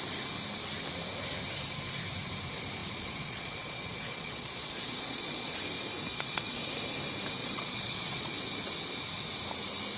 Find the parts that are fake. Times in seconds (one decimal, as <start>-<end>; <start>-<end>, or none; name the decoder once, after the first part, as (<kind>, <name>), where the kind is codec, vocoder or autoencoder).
2.8-5.5 (vocoder, Vocos); 6.1-6.6; 7.4-8.3